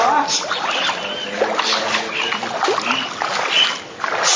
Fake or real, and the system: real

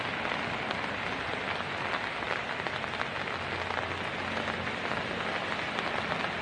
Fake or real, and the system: real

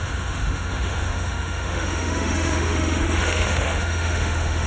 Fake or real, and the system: fake, autoencoder, DAC-VAE